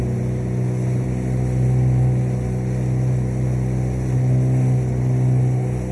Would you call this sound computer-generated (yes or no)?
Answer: no